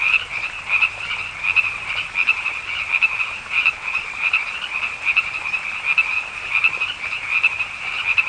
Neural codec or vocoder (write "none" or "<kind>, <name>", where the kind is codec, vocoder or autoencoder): vocoder, BigVGAN v2